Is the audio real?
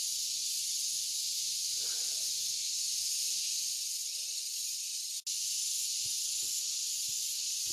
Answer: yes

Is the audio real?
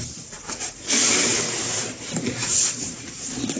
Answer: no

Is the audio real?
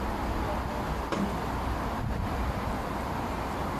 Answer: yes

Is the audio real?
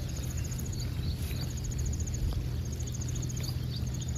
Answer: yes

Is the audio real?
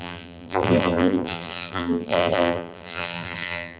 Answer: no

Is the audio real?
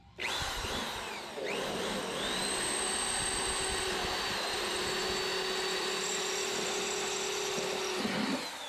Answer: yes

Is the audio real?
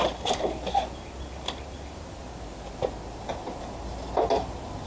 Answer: yes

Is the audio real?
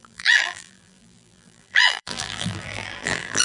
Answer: no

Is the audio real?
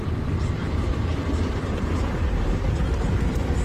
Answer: no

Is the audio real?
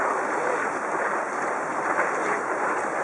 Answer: yes